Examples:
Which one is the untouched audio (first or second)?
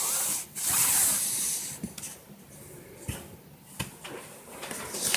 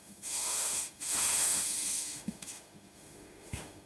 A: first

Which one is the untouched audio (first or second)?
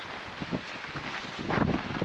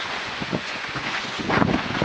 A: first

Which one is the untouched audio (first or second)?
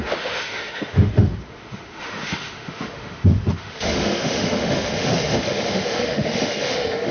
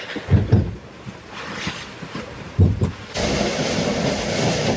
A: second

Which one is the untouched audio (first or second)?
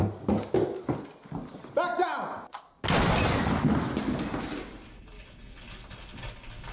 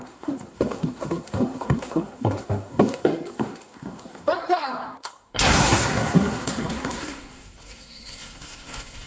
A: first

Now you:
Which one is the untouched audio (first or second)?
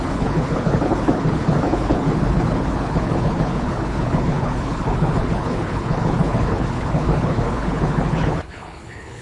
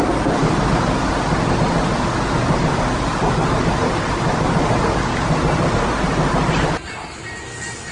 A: second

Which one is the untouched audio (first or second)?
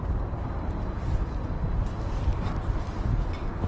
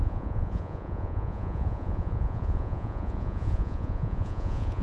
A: first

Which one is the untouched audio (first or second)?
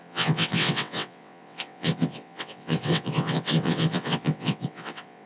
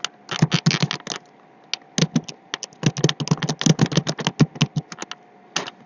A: second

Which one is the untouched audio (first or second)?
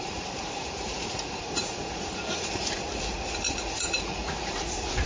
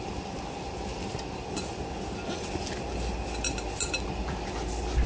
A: second